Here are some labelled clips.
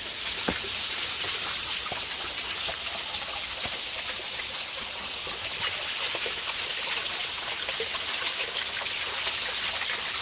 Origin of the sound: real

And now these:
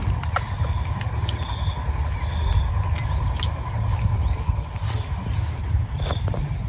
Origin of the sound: real